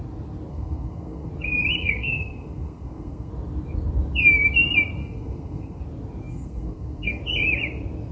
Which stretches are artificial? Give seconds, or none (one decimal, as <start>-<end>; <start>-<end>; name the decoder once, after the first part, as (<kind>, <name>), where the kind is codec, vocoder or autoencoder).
0.5-1.3 (codec, SNAC); 1.8-3.3; 5.0-5.8; 6.3-7.2